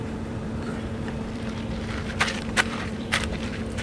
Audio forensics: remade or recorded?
remade